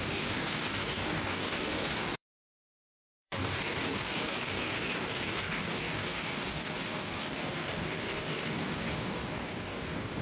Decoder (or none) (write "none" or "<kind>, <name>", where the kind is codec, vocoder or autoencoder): codec, DAC